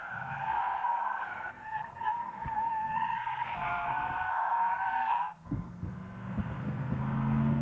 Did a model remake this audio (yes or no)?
yes